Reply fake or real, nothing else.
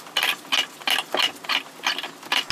real